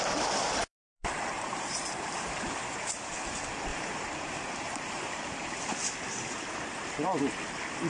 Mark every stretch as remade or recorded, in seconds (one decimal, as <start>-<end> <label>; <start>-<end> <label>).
0.0-0.6 recorded; 0.6-3.0 remade; 3.0-3.7 recorded; 3.7-7.2 remade; 7.2-7.9 recorded